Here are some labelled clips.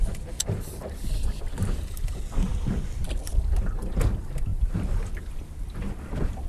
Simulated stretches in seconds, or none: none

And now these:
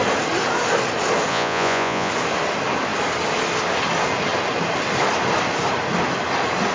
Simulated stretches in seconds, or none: 1.3-2.1 (vocoder, Vocos)